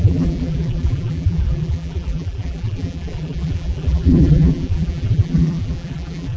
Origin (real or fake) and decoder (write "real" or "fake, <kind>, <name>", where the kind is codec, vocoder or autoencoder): fake, vocoder, BigVGAN v2